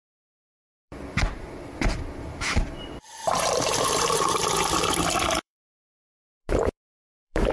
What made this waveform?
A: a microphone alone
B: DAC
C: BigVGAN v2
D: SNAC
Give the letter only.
C